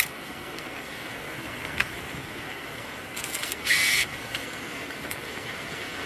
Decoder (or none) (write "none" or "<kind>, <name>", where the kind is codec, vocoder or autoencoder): codec, SNAC